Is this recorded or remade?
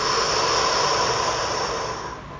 recorded